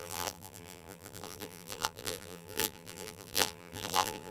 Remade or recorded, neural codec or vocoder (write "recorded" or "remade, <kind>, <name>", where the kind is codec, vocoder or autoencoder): remade, vocoder, BigVGAN v2